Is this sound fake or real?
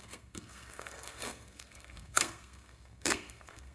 fake